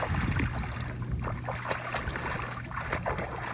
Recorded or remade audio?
recorded